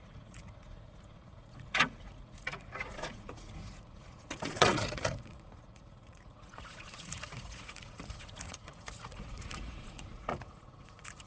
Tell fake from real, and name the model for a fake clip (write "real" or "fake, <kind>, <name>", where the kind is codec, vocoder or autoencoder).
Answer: fake, vocoder, Vocos